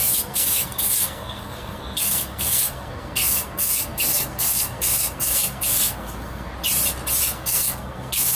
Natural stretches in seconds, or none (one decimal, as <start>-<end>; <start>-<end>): 6.5-7.2